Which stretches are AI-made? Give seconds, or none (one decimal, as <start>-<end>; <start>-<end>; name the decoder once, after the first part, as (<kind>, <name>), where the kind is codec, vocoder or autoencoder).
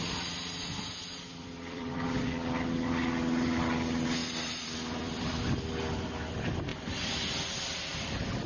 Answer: 1.3-2.2 (vocoder, BigVGAN v2); 4.2-5.3